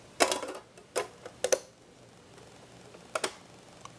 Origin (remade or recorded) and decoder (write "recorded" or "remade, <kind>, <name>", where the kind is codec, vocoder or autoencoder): recorded